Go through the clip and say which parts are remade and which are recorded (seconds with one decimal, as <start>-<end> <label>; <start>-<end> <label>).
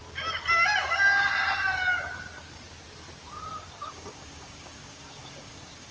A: 0.0-0.8 recorded; 0.8-1.3 remade; 1.3-3.9 recorded; 3.9-5.9 remade